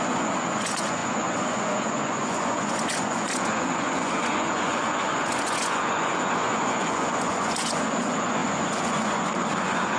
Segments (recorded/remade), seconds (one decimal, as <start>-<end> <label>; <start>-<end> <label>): 0.0-10.0 remade